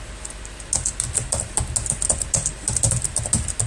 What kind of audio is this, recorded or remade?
recorded